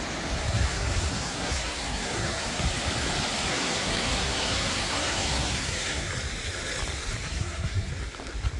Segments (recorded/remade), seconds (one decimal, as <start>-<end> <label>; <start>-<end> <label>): 0.0-0.4 recorded; 0.4-2.6 remade; 2.6-3.5 recorded; 3.5-6.1 remade; 6.1-7.3 recorded; 7.3-7.9 remade; 7.9-8.6 recorded